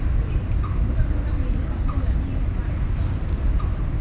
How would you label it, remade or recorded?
recorded